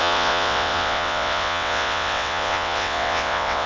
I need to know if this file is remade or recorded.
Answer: remade